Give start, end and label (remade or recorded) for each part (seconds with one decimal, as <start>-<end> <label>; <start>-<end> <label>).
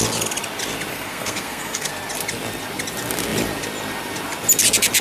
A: 0.0-0.9 recorded; 0.9-1.9 remade; 1.9-5.0 recorded